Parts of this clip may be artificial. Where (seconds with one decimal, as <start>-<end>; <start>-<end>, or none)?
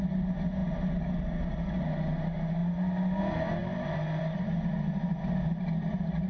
2.6-3.2